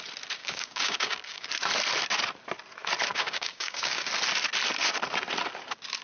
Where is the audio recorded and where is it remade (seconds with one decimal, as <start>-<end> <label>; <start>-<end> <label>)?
0.0-0.4 recorded; 0.4-1.5 remade; 1.5-3.1 recorded; 3.1-4.1 remade; 4.1-6.0 recorded